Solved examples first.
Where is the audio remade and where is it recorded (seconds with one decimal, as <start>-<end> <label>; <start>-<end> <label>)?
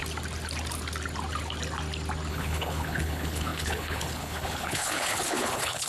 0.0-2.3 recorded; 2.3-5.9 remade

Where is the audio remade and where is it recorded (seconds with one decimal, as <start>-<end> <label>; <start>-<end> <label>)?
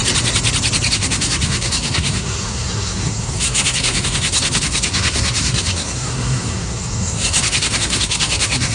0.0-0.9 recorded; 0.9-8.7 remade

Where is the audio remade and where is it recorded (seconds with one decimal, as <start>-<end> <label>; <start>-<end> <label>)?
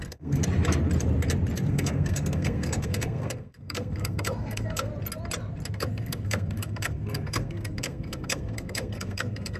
0.0-0.4 remade; 0.4-1.7 recorded; 1.7-4.9 remade; 4.9-5.7 recorded; 5.7-9.6 remade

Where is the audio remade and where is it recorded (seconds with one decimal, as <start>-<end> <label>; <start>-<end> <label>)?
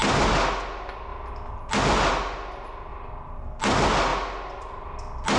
0.0-2.9 recorded; 2.9-3.4 remade; 3.4-5.4 recorded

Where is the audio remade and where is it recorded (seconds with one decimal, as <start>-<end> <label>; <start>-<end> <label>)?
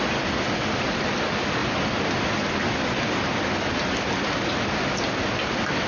0.0-5.9 recorded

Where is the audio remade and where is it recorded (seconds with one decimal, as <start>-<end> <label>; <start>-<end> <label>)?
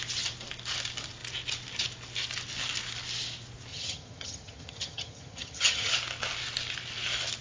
0.0-3.7 recorded; 3.7-5.9 remade; 5.9-7.4 recorded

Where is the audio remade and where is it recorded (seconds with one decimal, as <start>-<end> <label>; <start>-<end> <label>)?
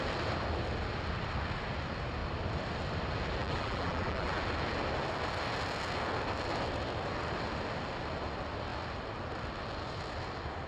0.0-3.4 recorded; 3.4-4.4 remade; 4.4-10.7 recorded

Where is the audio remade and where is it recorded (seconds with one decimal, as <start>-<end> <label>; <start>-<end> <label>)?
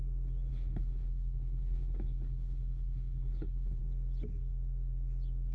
0.0-0.5 recorded; 0.5-3.8 remade; 3.8-5.5 recorded